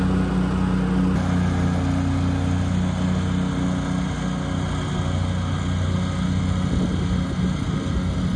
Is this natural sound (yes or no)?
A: yes